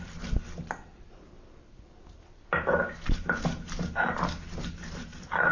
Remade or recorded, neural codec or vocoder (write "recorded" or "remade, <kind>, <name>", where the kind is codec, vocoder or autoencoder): recorded